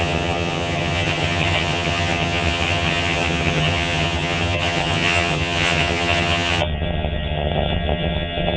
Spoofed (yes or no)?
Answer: yes